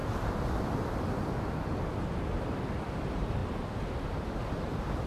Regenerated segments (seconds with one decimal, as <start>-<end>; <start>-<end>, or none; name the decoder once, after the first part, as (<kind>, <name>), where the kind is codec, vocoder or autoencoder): none